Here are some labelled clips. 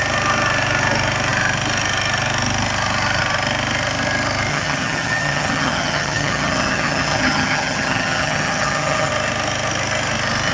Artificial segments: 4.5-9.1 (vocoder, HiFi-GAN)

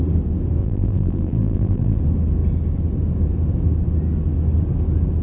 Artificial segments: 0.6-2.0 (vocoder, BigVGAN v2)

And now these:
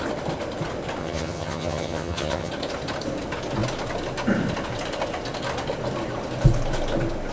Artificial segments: 1.0-2.5 (vocoder, HiFi-GAN)